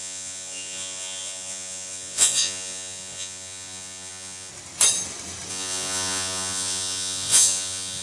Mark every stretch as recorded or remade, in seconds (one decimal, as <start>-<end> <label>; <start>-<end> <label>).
0.0-4.5 remade; 4.5-5.5 recorded; 5.5-8.0 remade